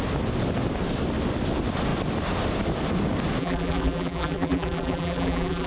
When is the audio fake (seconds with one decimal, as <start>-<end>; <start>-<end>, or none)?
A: 3.4-5.7